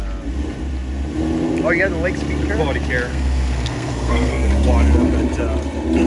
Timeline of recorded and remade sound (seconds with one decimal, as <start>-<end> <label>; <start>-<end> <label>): 0.0-3.1 recorded; 3.1-4.5 remade; 4.5-6.1 recorded